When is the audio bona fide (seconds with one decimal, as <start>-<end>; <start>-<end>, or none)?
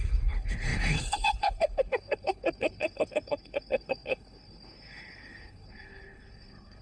none